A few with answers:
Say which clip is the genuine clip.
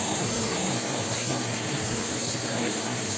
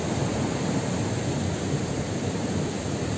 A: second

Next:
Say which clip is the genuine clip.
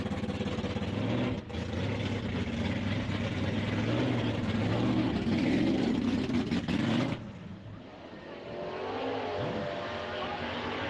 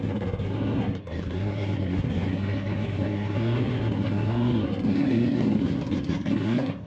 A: first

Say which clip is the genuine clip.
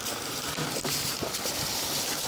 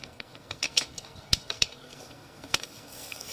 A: first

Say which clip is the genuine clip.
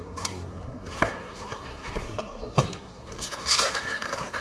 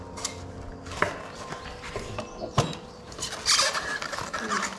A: second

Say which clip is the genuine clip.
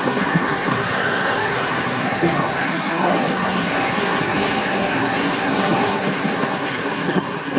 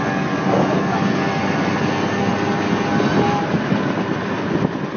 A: second